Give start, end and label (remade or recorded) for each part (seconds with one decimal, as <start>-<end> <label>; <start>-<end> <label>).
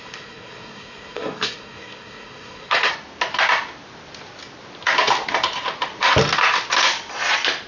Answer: 0.0-2.9 remade; 2.9-7.7 recorded